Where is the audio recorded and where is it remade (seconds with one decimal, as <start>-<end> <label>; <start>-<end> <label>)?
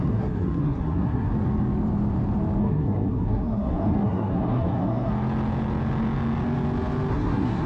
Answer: 0.0-1.3 remade; 1.3-2.6 recorded; 2.6-5.1 remade; 5.1-7.1 recorded; 7.1-7.7 remade